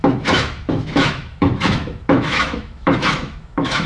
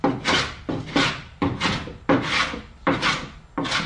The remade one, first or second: first